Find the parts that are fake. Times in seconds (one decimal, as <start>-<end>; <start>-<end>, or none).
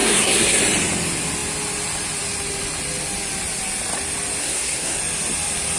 0.0-0.6; 4.4-5.0